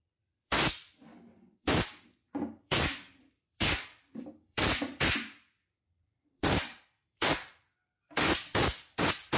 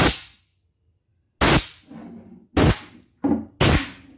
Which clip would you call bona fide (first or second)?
second